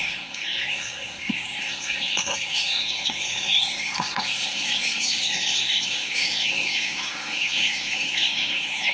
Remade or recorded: remade